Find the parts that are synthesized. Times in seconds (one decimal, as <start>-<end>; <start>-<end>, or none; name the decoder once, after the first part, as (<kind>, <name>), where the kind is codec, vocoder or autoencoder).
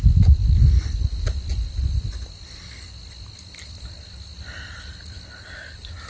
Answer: none